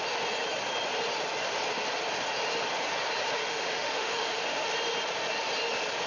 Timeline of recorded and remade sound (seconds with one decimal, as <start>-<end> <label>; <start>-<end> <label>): 0.0-3.4 recorded; 3.4-4.7 remade; 4.7-6.1 recorded